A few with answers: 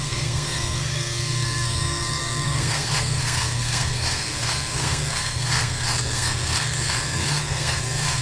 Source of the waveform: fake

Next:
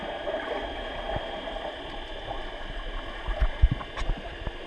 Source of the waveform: real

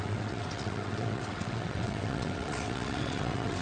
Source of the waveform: fake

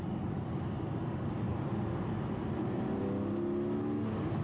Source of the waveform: real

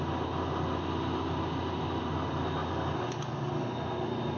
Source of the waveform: real